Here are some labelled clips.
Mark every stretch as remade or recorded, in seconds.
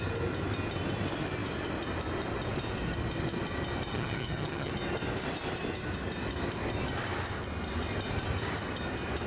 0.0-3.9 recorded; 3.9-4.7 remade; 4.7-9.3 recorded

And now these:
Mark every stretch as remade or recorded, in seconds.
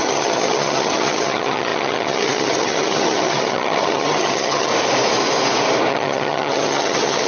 0.0-4.7 remade; 4.7-5.9 recorded; 5.9-7.3 remade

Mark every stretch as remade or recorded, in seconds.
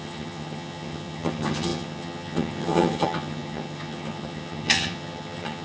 0.0-5.6 remade